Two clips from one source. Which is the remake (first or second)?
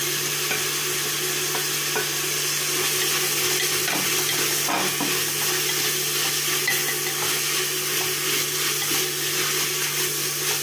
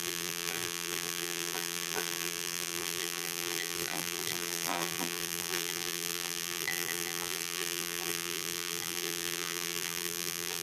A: second